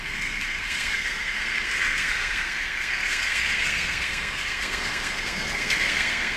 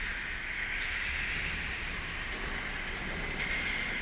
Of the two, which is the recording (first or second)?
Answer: second